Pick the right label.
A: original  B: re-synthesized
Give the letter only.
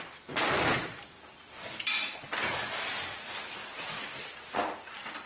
A